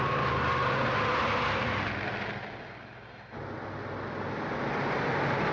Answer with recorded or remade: recorded